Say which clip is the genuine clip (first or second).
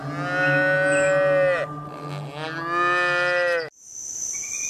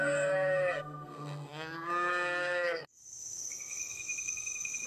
first